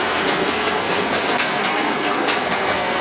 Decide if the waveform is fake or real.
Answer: fake